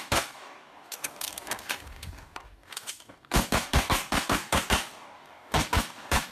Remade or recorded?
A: remade